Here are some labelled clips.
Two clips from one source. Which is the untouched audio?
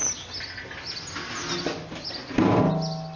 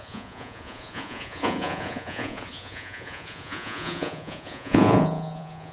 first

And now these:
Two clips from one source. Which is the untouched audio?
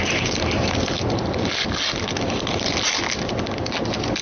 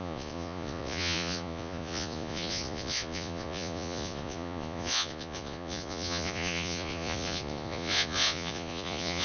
first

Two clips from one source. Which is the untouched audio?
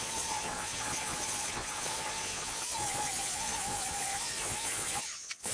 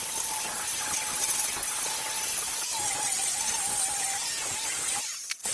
second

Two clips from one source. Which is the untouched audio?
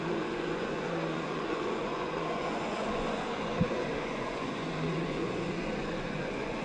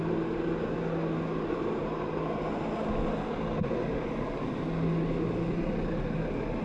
second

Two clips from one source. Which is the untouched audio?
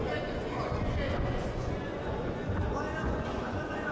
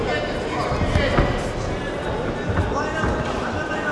second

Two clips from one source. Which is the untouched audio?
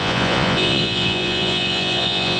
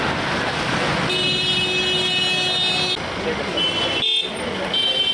second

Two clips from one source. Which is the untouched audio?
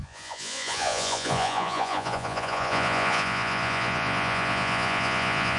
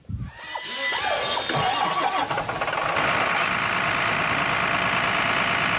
second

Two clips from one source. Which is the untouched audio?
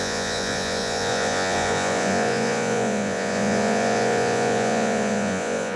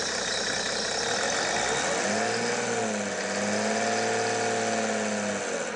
second